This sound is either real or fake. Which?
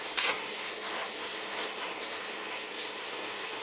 fake